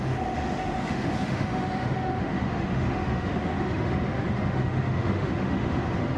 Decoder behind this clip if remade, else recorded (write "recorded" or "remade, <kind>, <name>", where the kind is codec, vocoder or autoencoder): remade, autoencoder, DAC-VAE